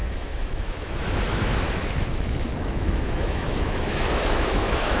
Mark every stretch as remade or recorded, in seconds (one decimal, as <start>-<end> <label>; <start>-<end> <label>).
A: 0.0-5.0 remade